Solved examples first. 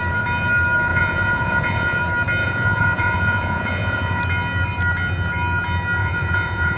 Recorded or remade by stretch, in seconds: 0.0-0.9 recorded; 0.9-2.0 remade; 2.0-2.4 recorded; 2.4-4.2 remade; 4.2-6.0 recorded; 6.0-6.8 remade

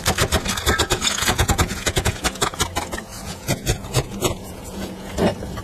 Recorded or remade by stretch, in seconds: 0.0-0.9 recorded; 0.9-2.6 remade; 2.6-3.1 recorded; 3.1-5.1 remade; 5.1-5.6 recorded

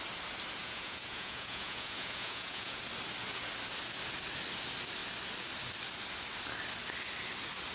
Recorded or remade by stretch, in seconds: 0.0-0.6 recorded; 0.6-2.8 remade; 2.8-7.7 recorded

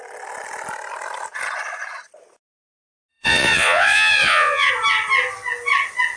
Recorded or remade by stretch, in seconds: 0.0-3.1 recorded; 3.1-4.7 remade; 4.7-6.2 recorded